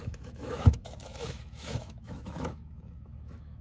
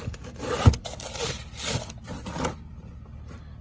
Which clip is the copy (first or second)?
first